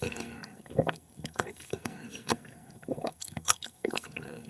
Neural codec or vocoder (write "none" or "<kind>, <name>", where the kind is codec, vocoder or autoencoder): codec, SNAC